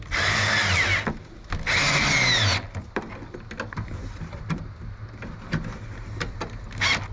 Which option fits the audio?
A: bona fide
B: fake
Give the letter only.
A